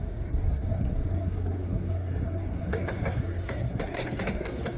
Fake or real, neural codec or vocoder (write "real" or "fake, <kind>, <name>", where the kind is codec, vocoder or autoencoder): fake, codec, SNAC